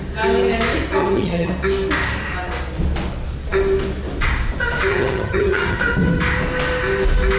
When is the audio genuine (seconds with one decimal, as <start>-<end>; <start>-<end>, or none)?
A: 0.0-1.0; 1.5-4.9; 5.8-7.4

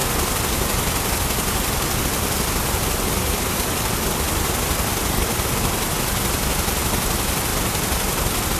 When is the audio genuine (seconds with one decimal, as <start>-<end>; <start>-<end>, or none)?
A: 0.0-8.6

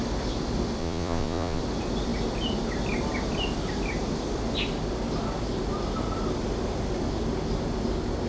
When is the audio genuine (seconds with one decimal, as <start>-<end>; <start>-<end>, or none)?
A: 0.0-0.8; 1.6-8.3

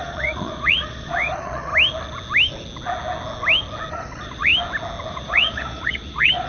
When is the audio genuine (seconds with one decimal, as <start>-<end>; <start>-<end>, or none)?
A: 1.7-3.9; 4.5-5.1

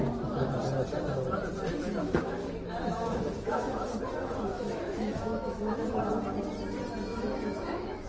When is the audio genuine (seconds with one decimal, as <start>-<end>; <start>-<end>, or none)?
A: 0.0-2.0; 3.9-4.5; 5.9-7.1

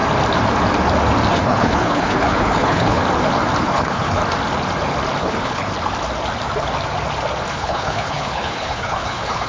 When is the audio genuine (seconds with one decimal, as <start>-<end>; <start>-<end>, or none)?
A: 0.0-1.3; 3.0-3.6; 4.2-5.2; 5.7-7.5

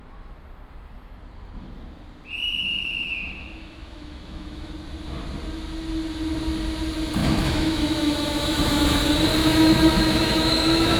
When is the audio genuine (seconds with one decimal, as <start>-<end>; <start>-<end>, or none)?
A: 0.0-2.6; 4.7-7.2; 9.0-9.4

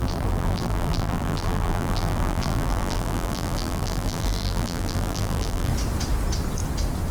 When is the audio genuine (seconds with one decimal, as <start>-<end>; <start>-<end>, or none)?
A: 5.7-7.1